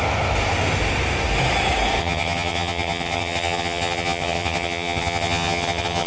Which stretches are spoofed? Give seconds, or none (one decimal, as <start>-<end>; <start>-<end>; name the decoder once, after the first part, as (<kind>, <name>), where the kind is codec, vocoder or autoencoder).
2.0-6.1 (vocoder, HiFi-GAN)